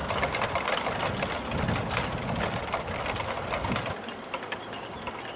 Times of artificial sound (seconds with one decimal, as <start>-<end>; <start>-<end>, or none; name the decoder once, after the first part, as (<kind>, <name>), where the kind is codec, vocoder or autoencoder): none

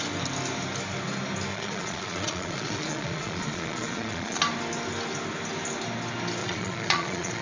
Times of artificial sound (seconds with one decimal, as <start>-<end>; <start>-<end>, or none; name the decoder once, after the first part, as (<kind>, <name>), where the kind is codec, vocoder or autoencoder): 1.5-4.4 (vocoder, Vocos); 6.4-7.4

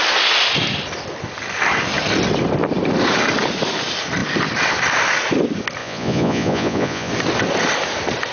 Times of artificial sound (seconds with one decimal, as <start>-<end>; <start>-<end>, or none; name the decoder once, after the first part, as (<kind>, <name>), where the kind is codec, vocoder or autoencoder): 5.8-7.1 (vocoder, Vocos)

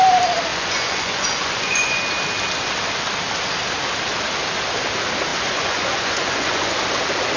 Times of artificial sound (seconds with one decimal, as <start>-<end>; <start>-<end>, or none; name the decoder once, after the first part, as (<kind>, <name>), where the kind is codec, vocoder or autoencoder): 0.5-2.0 (vocoder, Vocos); 5.3-6.8

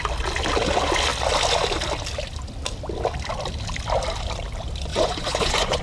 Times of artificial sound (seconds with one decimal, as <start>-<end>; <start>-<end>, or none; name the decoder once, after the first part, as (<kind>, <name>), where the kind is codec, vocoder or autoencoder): 4.9-5.8 (vocoder, Vocos)

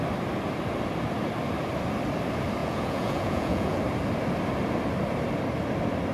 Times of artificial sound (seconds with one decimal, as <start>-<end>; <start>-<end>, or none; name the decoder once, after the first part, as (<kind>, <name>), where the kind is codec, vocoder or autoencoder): 2.6-3.8 (vocoder, Vocos)